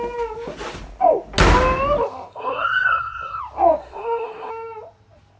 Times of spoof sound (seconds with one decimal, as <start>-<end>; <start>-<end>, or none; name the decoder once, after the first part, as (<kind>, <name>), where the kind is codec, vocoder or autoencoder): 2.3-3.4 (codec, SNAC); 3.8-4.5